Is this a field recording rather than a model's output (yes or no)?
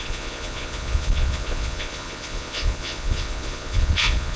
no